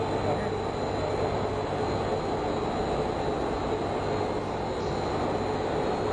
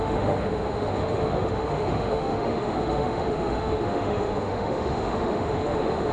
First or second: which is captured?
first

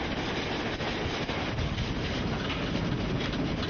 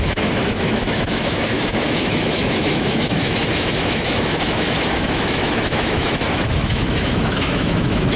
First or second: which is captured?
first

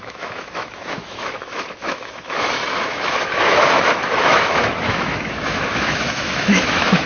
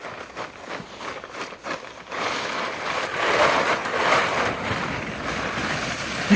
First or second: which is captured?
second